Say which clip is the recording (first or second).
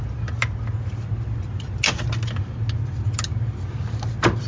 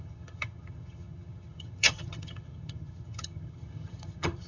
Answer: first